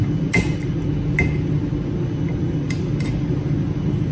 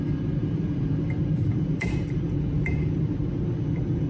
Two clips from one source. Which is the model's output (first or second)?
second